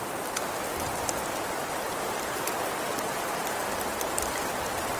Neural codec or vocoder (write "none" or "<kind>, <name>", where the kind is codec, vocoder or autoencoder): none